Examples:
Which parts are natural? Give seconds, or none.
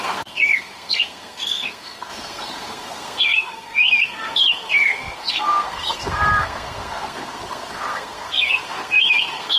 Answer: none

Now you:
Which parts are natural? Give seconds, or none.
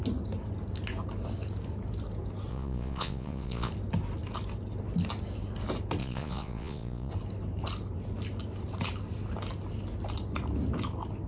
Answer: 0.0-2.5; 3.7-6.0; 7.1-11.3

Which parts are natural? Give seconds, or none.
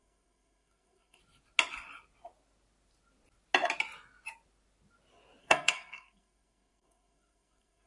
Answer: 1.2-5.4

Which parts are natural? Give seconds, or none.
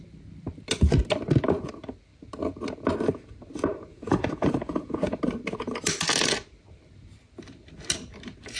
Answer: 0.0-3.9; 5.2-8.6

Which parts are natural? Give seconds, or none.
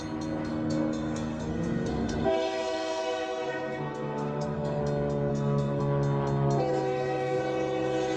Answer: 0.0-0.5; 4.8-5.3; 5.8-6.7; 7.4-8.2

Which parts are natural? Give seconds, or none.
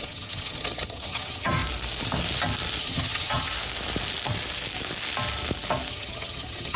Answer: 1.6-2.8; 3.5-5.9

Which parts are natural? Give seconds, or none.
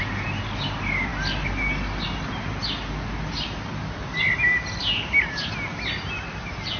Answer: 0.0-6.8